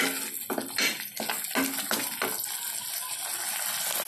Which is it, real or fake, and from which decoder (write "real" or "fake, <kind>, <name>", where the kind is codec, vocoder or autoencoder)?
real